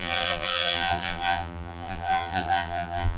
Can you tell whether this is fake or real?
fake